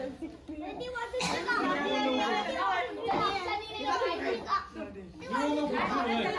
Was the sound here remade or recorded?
recorded